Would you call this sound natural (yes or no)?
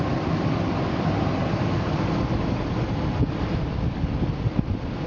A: yes